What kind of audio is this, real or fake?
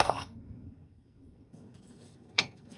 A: fake